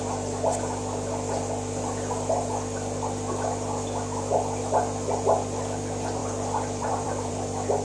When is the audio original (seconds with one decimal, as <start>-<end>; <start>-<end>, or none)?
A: 0.0-6.2; 7.3-7.8